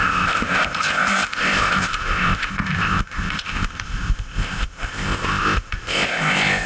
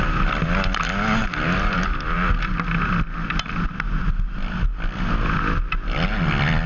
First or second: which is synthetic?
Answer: first